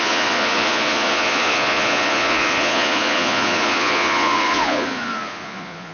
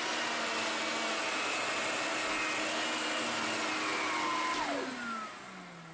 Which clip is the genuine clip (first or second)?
second